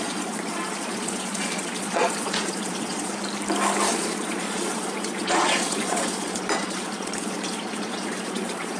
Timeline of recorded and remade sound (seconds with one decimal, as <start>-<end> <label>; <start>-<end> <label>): 0.0-3.1 remade; 3.1-3.9 recorded; 3.9-8.8 remade